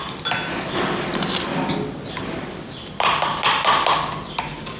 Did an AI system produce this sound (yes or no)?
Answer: no